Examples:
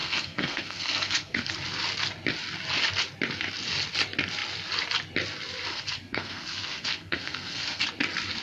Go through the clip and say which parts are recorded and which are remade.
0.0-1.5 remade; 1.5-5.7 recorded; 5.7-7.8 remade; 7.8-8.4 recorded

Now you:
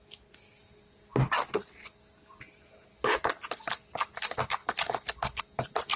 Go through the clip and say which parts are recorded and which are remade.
0.0-6.0 recorded

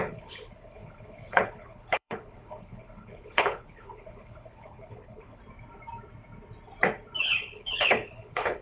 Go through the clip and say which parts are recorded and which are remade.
0.0-5.4 remade; 5.4-7.2 recorded; 7.2-8.6 remade

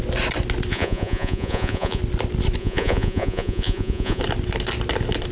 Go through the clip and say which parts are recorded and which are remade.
0.0-0.7 recorded; 0.7-2.0 remade; 2.0-2.6 recorded; 2.6-4.2 remade; 4.2-5.3 recorded

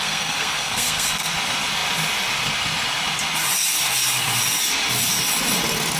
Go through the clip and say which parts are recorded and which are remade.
0.0-1.3 remade; 1.3-6.0 recorded

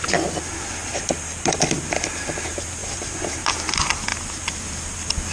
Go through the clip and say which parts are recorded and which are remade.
0.0-0.8 recorded; 0.8-1.6 remade; 1.6-2.8 recorded; 2.8-3.3 remade; 3.3-5.3 recorded